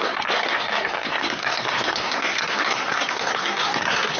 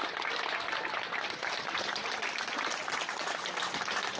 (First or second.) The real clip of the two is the second